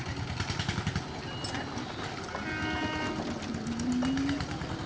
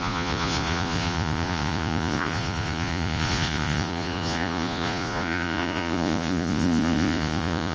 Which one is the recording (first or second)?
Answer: first